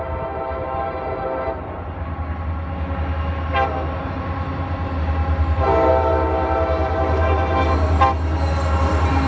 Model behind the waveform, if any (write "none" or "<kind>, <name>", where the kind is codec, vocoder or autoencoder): none